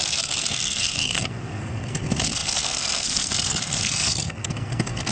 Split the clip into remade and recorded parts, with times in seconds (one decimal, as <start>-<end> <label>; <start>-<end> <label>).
0.0-5.1 remade